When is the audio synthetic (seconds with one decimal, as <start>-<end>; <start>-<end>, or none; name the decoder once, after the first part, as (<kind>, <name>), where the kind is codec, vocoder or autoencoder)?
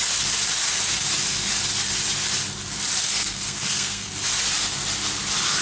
3.1-4.1 (codec, SNAC)